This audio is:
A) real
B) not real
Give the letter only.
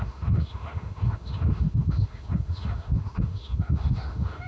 B